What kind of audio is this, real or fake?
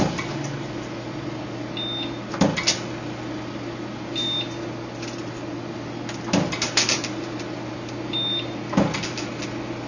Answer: real